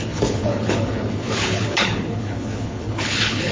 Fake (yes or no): yes